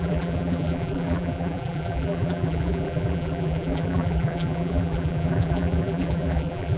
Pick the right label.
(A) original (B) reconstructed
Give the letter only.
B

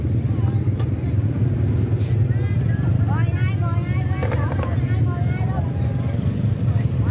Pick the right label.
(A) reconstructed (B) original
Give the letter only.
B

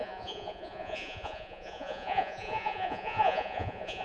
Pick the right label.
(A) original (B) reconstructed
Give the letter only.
B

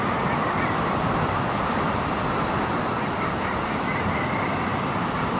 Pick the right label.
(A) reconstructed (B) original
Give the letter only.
B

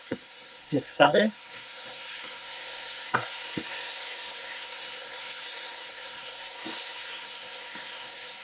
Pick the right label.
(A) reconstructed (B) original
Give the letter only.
A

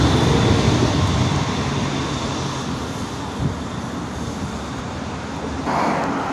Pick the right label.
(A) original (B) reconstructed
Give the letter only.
A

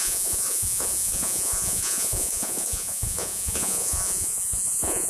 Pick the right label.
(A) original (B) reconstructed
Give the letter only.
B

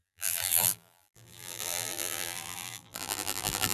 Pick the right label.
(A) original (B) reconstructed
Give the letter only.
B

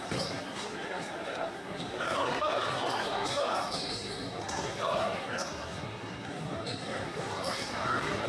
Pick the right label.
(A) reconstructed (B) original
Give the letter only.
A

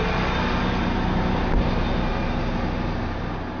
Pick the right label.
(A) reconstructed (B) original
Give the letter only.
B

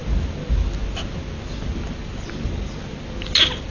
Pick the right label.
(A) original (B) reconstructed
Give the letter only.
A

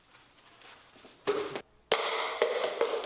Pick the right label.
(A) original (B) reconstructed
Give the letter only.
A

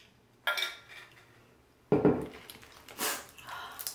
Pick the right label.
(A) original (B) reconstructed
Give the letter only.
A